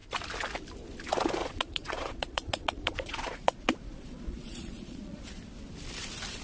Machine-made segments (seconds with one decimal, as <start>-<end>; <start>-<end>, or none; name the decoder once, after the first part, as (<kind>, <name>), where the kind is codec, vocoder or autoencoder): 1.4-5.2 (vocoder, Vocos)